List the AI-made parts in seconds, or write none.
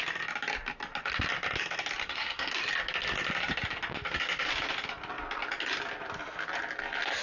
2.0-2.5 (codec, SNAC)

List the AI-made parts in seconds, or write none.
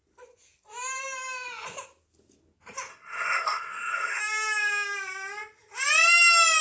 2.9-4.2 (codec, SNAC)